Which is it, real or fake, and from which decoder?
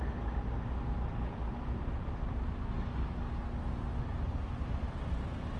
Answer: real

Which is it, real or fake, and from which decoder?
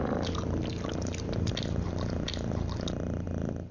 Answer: real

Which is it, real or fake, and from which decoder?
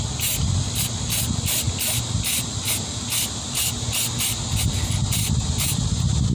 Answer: real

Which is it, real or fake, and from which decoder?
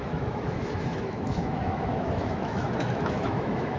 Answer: fake, autoencoder, DAC-VAE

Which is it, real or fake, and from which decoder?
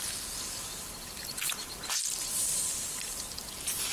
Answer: real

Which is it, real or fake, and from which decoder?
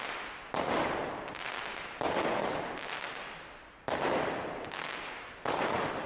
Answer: real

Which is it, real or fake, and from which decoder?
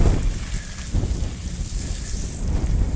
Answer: real